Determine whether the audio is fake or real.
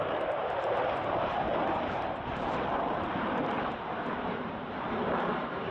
fake